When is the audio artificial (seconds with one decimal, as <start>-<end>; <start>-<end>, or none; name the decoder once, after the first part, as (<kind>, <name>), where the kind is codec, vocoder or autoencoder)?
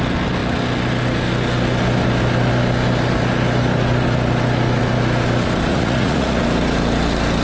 5.7-6.4 (vocoder, Vocos)